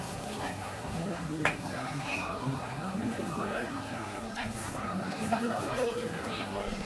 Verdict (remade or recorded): remade